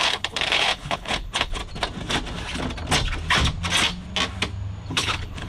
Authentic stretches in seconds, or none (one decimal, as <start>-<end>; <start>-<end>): 1.6-4.9